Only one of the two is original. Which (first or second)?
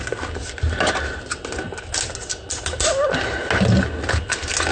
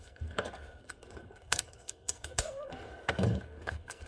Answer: first